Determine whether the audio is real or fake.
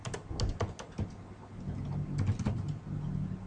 real